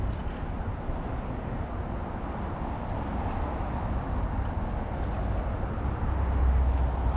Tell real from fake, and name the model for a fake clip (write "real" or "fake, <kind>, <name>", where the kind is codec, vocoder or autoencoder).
real